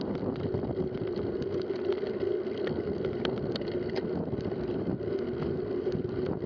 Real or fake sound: real